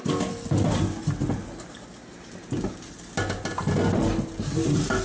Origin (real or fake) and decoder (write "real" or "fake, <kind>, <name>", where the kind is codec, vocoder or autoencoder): real